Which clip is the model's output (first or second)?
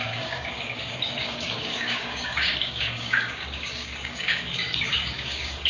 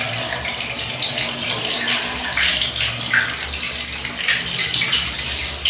first